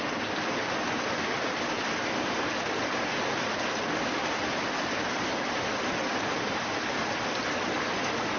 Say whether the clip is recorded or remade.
recorded